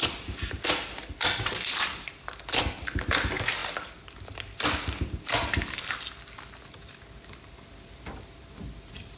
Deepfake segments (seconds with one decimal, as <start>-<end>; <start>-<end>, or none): none